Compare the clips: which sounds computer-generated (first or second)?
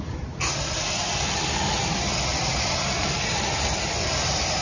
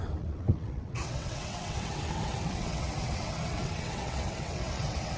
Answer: second